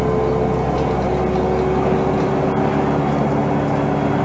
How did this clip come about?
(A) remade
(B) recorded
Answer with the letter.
B